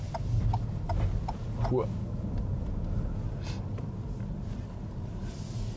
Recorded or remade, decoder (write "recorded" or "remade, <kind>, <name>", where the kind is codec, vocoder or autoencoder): recorded